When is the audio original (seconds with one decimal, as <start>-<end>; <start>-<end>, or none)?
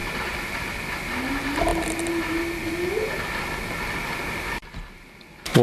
0.0-5.6